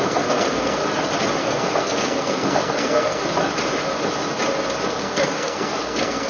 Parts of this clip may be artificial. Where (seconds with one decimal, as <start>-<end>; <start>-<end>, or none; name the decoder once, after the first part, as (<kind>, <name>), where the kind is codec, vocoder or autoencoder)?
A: 0.0-0.8 (codec, SNAC); 1.4-3.2; 4.9-6.3